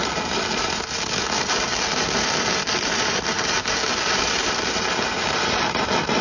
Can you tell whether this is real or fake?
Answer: fake